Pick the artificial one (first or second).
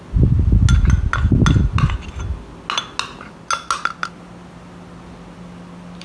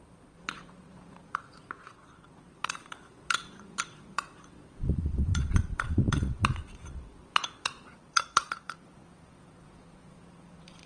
second